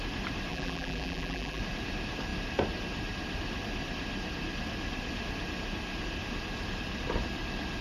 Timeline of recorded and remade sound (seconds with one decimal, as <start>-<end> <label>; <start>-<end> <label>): 0.0-0.5 recorded; 0.5-1.6 remade; 1.6-7.8 recorded